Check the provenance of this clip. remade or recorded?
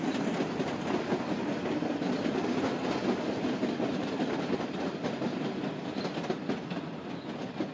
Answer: recorded